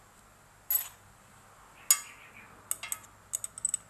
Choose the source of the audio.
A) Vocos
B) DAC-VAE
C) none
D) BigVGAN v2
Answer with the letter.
C